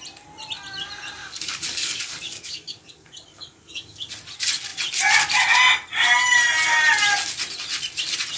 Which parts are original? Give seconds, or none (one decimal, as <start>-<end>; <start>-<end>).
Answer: 0.0-1.2; 4.1-8.4